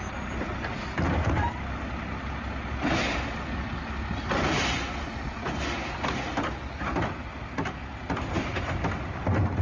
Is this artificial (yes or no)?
no